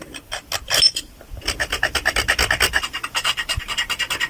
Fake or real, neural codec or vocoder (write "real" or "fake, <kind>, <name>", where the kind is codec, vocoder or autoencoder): real